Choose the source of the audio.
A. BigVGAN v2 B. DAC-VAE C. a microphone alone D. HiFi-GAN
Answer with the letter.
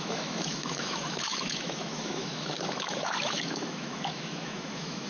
B